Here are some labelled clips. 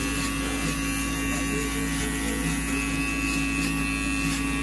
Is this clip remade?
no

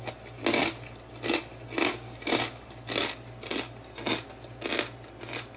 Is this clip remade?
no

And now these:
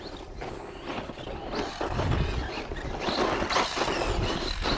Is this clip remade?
no